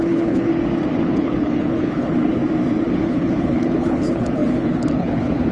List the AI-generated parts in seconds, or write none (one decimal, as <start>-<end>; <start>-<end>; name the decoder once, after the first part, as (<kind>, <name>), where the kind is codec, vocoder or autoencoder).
0.0-0.5 (codec, HILCodec); 1.0-2.4; 2.9-5.5